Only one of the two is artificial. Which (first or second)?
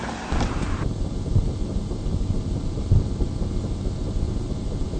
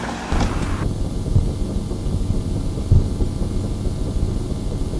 first